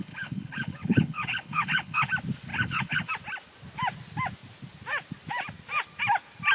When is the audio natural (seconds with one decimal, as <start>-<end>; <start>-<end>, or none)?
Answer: 2.1-2.5; 3.1-6.5